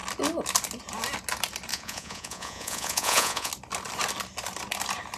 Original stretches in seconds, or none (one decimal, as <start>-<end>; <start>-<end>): 0.0-1.7; 3.5-5.2